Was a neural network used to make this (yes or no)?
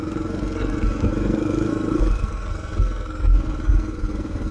yes